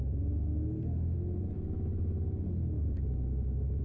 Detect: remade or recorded recorded